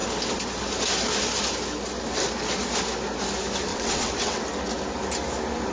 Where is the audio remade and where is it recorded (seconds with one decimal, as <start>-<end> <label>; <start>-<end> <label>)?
0.0-3.7 recorded; 3.7-4.4 remade; 4.4-5.7 recorded